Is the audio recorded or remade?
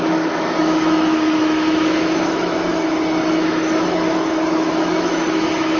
remade